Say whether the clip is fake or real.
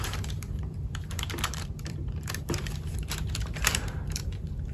fake